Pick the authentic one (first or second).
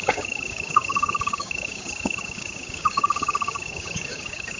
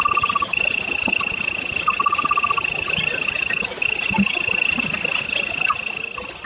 second